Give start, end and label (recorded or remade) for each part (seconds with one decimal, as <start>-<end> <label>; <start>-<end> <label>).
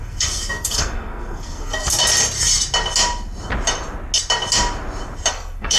0.0-2.0 remade; 2.0-5.3 recorded; 5.3-5.8 remade